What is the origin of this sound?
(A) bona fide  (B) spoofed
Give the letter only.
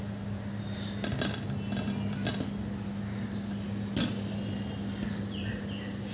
A